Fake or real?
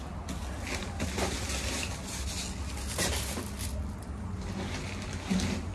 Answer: real